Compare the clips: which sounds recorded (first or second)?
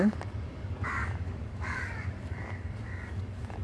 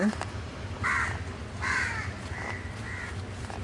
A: second